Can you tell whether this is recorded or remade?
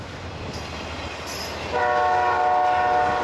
recorded